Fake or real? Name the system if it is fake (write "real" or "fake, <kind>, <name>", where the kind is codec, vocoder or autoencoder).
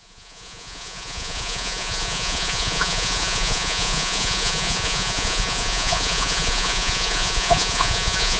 fake, vocoder, Vocos